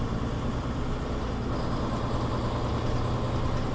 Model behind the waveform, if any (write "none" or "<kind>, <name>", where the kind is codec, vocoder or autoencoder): none